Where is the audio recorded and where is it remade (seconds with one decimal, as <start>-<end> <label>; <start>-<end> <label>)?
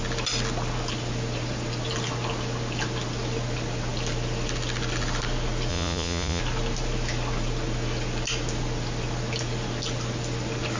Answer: 0.0-5.7 recorded; 5.7-6.4 remade; 6.4-10.8 recorded